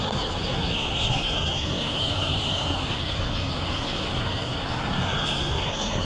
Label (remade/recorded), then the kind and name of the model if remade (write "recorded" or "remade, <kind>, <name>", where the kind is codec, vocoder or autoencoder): remade, codec, SNAC